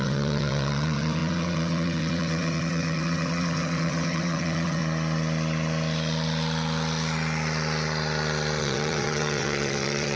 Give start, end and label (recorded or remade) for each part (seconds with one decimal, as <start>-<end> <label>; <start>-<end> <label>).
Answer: 0.0-4.8 remade; 4.8-8.6 recorded; 8.6-10.2 remade